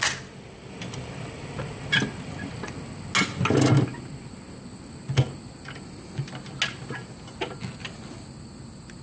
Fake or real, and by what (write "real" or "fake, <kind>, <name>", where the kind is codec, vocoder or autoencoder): real